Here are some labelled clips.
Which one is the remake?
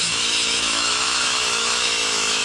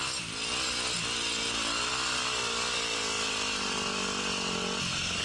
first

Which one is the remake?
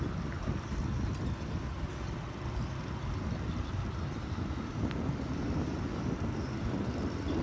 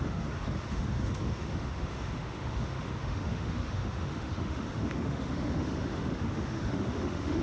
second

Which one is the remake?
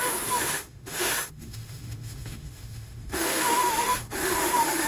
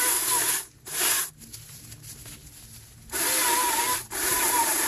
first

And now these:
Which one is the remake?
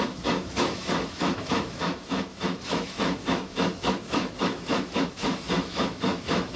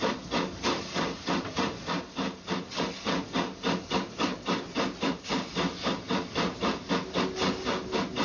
first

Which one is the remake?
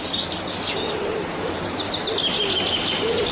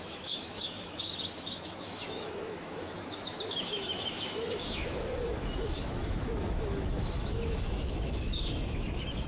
second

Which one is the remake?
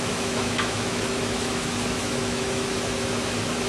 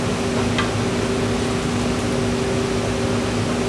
first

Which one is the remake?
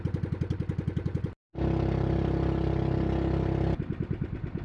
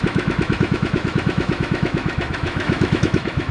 second